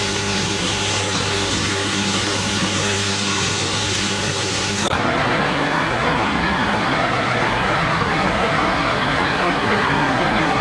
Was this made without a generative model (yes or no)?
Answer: no